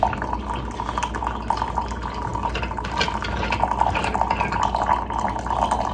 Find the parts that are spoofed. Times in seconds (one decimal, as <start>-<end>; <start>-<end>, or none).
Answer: none